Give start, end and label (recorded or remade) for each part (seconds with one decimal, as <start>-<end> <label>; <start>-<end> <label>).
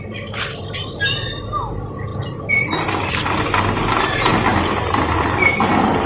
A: 0.0-6.1 recorded